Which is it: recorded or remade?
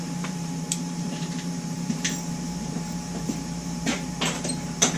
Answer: remade